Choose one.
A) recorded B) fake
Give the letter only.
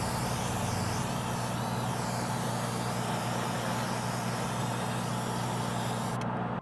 A